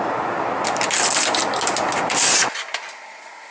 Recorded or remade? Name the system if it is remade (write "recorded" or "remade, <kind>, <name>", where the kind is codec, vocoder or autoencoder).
recorded